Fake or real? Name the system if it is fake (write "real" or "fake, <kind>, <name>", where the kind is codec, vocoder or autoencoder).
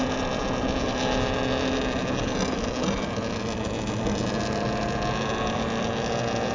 real